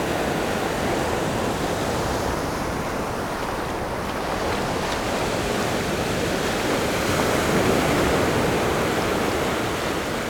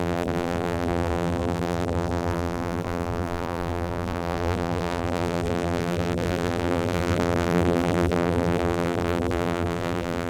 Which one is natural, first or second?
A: first